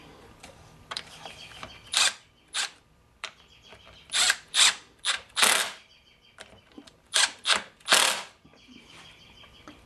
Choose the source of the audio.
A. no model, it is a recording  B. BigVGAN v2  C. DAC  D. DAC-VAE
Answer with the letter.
B